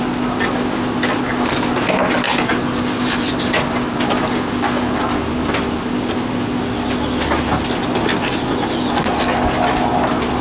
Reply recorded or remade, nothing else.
recorded